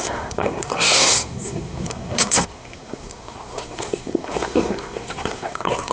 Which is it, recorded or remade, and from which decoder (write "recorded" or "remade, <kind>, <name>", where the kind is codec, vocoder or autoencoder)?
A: remade, codec, SNAC